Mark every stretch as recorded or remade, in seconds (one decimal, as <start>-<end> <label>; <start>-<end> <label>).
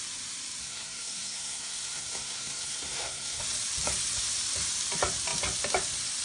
0.0-0.6 recorded; 0.6-3.4 remade; 3.4-6.2 recorded